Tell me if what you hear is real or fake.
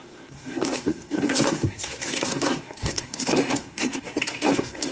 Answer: fake